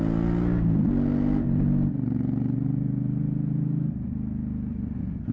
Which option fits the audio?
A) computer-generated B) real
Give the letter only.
B